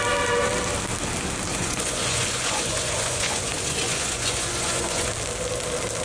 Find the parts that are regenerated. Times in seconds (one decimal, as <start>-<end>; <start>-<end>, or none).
1.5-5.1

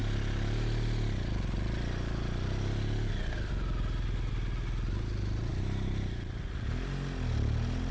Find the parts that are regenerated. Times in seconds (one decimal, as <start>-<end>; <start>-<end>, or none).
none

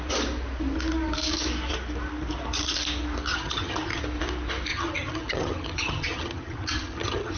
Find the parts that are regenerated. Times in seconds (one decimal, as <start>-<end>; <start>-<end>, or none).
3.3-4.0; 4.7-7.4